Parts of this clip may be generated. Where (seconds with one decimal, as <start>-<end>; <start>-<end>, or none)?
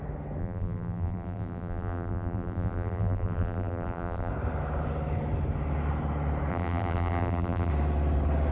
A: 0.4-4.3; 6.5-7.7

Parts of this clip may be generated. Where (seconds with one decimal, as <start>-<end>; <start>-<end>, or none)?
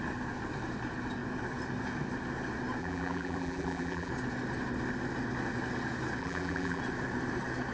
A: 2.8-4.1; 6.2-6.8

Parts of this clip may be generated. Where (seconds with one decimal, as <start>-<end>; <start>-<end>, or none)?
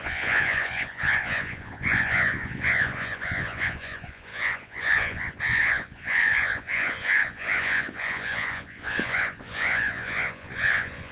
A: 0.0-11.1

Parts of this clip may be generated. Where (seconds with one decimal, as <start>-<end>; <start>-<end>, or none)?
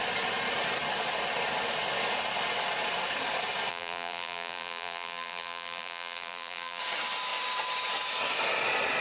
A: 3.7-6.8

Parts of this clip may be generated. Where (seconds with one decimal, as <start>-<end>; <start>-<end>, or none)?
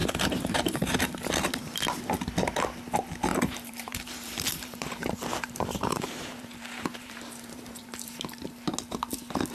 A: 0.0-1.1; 3.3-8.2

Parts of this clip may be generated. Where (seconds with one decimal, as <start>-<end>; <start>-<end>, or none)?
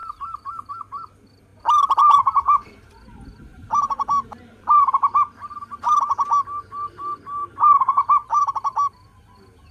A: 0.0-0.7; 3.5-4.9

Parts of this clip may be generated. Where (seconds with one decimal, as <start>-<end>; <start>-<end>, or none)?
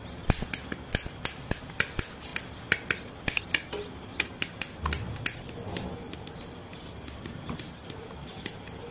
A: none